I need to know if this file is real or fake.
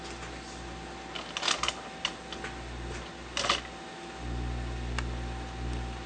real